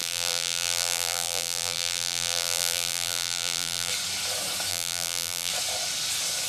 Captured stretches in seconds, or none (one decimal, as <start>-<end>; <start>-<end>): 3.9-4.7; 5.5-6.5